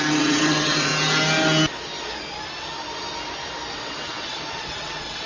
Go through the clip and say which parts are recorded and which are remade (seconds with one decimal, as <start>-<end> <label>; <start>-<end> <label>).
0.0-0.9 remade; 0.9-3.7 recorded; 3.7-5.3 remade